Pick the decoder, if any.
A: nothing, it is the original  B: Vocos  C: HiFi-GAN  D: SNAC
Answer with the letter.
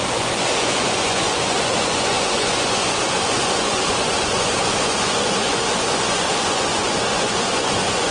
B